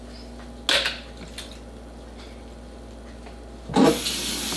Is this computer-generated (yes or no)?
no